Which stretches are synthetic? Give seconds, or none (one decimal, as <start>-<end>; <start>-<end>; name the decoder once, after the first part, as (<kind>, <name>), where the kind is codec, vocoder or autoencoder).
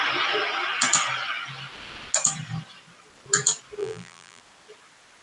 3.8-4.4 (vocoder, BigVGAN v2)